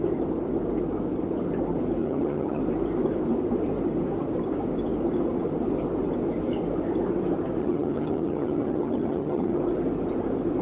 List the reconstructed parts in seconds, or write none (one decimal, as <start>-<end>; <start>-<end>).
2.0-2.6; 7.6-9.6